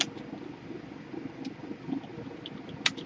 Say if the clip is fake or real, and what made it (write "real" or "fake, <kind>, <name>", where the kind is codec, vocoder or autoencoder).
real